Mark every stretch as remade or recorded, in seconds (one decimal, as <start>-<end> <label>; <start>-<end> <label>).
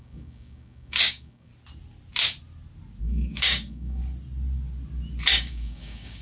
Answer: 0.0-1.5 remade; 1.5-3.0 recorded; 3.0-4.0 remade; 4.0-5.3 recorded; 5.3-6.2 remade